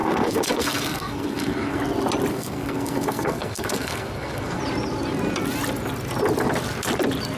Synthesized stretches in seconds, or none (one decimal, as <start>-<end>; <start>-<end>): 0.0-1.8; 2.3-4.6